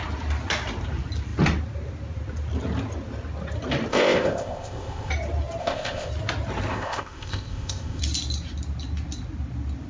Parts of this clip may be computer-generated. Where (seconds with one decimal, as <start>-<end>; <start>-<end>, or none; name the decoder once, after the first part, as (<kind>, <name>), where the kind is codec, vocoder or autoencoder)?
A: 3.9-5.1 (codec, ZipCodec); 5.6-6.1; 6.7-8.0